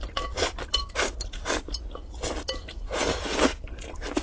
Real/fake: real